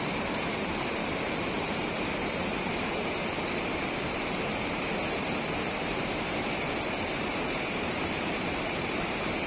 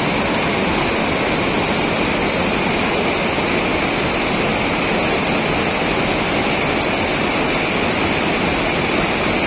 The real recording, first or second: second